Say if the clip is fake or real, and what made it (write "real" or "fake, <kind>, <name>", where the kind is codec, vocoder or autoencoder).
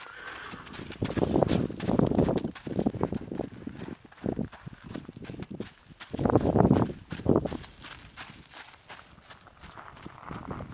fake, vocoder, BigVGAN v2